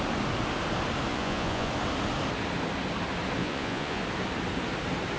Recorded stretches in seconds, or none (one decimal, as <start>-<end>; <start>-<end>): 0.0-1.1; 1.7-3.4; 4.0-5.2